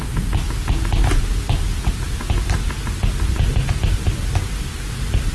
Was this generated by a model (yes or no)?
no